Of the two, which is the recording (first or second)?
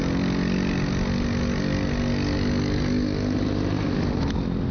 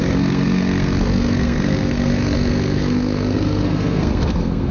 first